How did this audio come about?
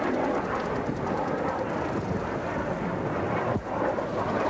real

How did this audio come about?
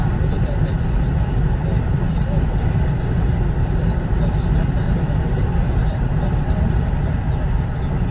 real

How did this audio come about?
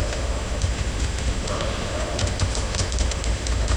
fake